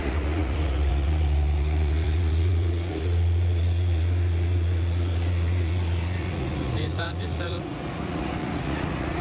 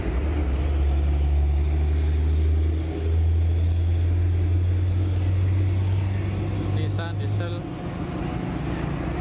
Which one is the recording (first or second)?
second